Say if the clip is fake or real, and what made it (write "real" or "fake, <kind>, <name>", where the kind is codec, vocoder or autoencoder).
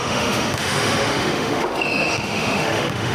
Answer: fake, autoencoder, DAC-VAE